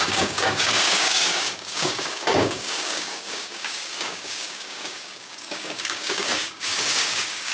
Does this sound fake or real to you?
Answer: fake